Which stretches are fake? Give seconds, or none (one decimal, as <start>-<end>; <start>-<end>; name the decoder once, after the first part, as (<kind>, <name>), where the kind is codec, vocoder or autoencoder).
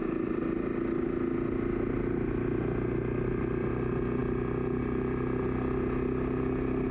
none